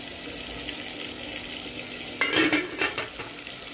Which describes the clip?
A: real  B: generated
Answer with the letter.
A